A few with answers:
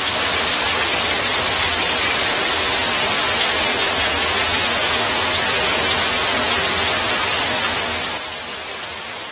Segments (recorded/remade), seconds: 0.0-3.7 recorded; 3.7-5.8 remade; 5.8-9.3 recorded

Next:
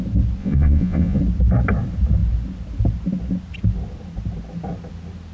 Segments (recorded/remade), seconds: 0.0-0.4 recorded; 0.4-1.2 remade; 1.2-5.3 recorded

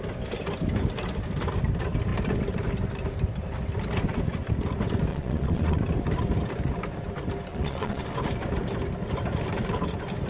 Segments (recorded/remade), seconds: 0.0-5.1 recorded; 5.1-5.8 remade; 5.8-7.5 recorded; 7.5-8.0 remade; 8.0-10.3 recorded

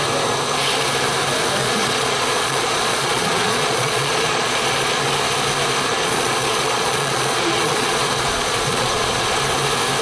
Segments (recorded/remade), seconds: 0.0-1.6 recorded; 1.6-5.0 remade; 5.0-5.9 recorded; 5.9-9.4 remade; 9.4-10.0 recorded